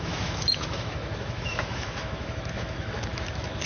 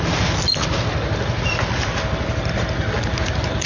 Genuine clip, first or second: second